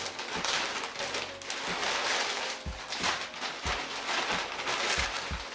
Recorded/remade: recorded